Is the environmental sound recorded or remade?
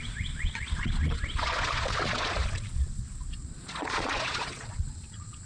remade